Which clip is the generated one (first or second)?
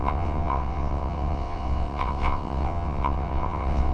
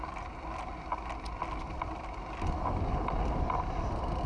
first